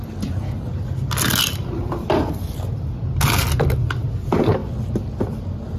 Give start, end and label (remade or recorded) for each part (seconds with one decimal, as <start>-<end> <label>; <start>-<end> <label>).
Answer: 0.0-1.6 recorded; 1.6-3.0 remade; 3.0-4.6 recorded; 4.6-5.8 remade